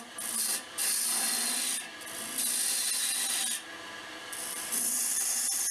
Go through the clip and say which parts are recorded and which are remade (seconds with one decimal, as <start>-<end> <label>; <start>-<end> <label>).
0.0-0.8 remade; 0.8-4.2 recorded; 4.2-5.7 remade